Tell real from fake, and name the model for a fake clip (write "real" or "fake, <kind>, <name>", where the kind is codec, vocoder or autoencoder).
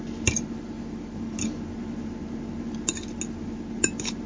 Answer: real